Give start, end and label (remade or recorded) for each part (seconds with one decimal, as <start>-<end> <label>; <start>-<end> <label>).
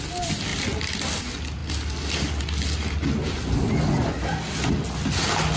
0.0-5.6 recorded